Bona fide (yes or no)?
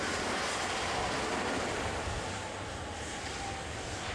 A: yes